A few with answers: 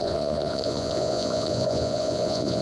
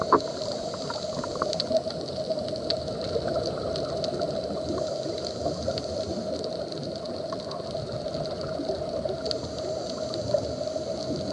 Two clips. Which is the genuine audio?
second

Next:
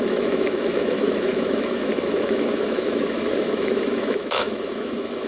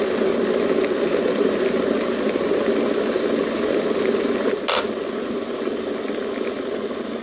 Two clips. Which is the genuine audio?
second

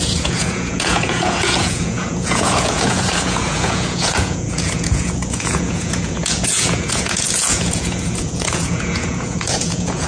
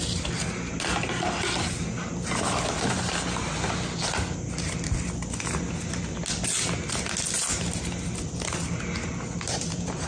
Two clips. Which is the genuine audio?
second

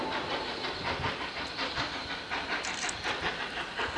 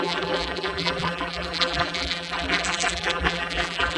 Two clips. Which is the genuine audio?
first